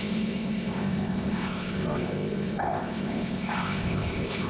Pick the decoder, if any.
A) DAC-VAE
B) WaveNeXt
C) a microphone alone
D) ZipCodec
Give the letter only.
D